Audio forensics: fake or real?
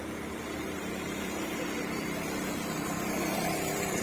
fake